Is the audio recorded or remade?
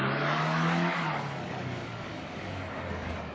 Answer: remade